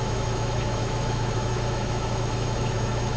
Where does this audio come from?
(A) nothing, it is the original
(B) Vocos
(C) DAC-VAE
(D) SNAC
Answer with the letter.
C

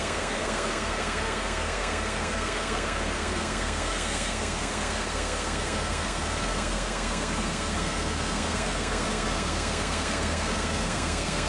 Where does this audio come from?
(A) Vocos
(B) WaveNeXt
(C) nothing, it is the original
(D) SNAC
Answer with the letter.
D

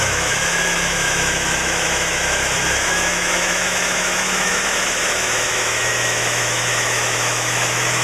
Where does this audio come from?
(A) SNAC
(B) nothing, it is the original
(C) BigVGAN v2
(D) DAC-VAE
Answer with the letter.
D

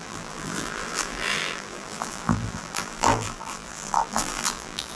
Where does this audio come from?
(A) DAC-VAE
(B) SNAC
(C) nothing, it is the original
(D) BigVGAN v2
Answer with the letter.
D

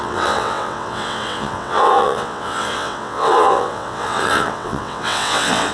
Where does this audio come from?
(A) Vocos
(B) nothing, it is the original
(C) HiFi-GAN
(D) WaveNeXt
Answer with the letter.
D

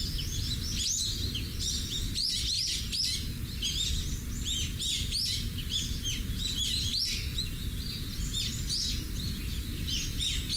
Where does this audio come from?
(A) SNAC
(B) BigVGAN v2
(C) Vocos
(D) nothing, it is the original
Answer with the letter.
D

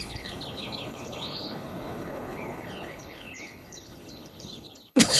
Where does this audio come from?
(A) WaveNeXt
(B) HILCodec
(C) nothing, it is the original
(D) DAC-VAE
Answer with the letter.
B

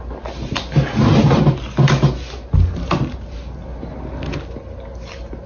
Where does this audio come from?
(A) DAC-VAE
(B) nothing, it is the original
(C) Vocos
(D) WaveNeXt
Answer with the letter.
B